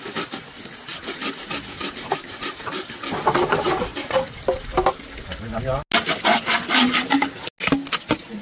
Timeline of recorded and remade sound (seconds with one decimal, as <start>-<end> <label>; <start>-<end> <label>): 0.0-8.4 recorded